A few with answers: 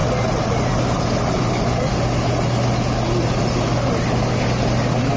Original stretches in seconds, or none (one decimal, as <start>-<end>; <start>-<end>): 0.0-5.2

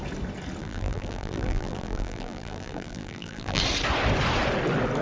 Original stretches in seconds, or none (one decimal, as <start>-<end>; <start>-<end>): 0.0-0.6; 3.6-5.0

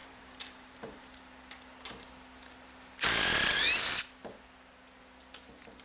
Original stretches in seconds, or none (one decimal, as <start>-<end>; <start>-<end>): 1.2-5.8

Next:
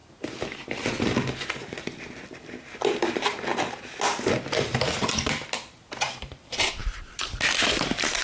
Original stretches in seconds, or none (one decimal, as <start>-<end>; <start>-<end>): 0.0-2.8; 3.5-5.9

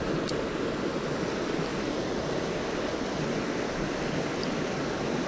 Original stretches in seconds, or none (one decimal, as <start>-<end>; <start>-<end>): 1.7-2.5

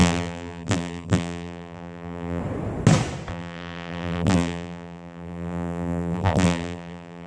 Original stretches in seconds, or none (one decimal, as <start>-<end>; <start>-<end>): 2.4-3.3